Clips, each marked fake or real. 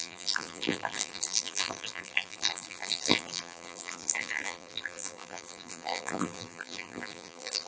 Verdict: fake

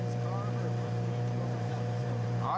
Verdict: fake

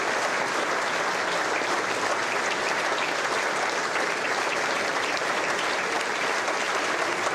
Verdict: real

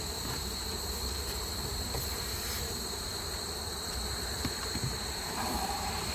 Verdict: fake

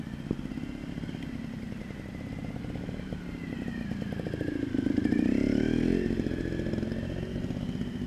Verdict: real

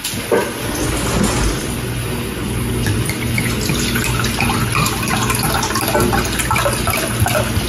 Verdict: real